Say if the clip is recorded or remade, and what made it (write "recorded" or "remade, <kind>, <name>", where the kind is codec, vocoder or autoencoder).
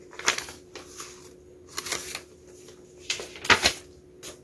recorded